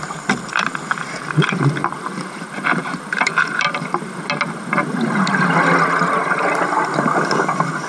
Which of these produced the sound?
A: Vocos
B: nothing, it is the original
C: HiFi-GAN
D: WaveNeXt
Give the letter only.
B